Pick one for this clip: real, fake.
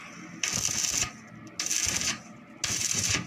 real